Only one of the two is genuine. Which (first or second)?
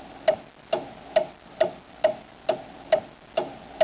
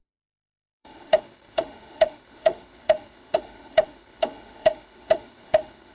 first